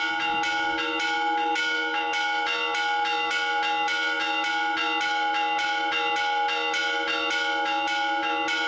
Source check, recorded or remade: recorded